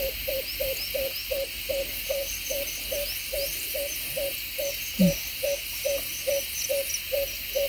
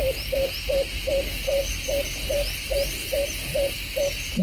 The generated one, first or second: second